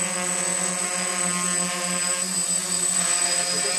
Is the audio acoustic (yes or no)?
yes